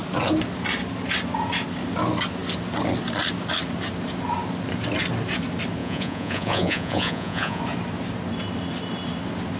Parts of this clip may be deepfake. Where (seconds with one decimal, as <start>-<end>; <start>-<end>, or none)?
5.8-7.6